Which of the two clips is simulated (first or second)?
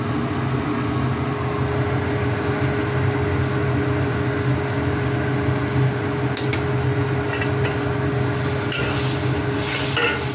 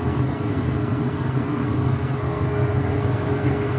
second